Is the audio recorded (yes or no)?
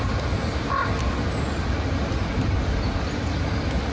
yes